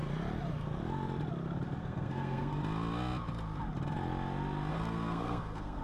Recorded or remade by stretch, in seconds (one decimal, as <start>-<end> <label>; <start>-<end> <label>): 0.0-1.8 recorded; 1.8-2.6 remade; 2.6-4.7 recorded; 4.7-5.8 remade